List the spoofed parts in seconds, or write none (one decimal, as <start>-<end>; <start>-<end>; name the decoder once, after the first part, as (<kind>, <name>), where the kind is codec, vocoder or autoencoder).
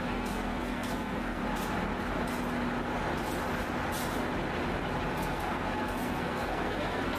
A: 0.0-1.4 (codec, SNAC); 5.1-7.2